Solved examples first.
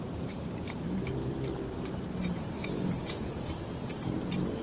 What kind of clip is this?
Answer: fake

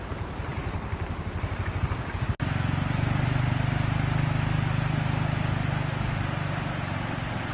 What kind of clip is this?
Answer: real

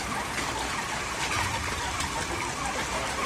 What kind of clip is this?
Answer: real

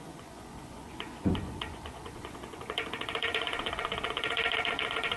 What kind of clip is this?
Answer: fake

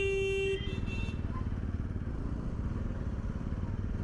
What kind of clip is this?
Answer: real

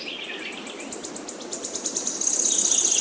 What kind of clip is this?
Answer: real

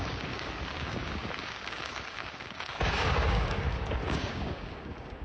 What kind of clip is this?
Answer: fake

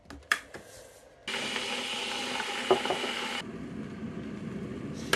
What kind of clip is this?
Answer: real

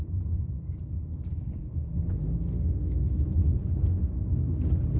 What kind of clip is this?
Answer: real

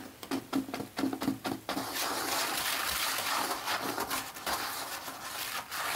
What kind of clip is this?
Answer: real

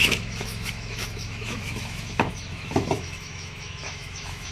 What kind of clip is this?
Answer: fake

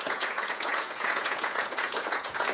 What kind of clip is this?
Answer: fake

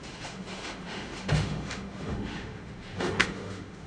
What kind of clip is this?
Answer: fake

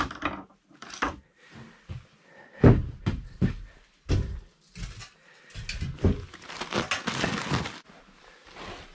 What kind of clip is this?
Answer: real